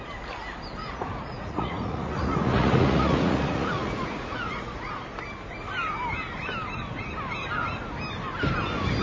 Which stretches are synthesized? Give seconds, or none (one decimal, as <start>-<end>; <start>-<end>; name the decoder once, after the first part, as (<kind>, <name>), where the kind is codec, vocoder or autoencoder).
0.8-4.9 (vocoder, Vocos)